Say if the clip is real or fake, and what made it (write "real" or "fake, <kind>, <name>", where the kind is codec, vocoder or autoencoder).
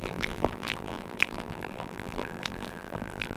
fake, vocoder, BigVGAN v2